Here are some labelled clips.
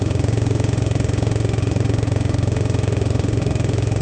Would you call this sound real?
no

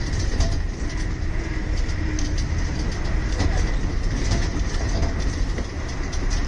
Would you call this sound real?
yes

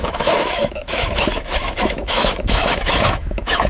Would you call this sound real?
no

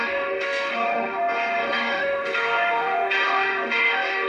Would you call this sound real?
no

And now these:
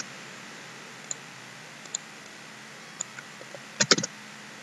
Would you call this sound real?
yes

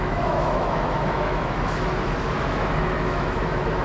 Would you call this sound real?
no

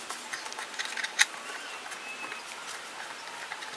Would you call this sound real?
yes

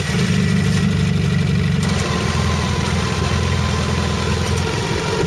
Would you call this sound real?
yes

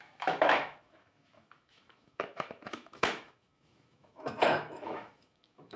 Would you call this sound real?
no